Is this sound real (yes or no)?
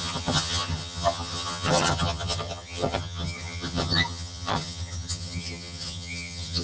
no